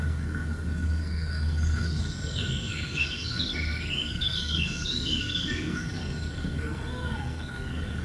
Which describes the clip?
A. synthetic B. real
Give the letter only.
A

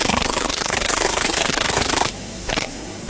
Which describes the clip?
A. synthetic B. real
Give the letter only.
A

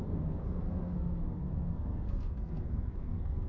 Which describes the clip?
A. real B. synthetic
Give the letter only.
B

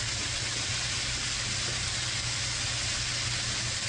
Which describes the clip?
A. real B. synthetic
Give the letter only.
A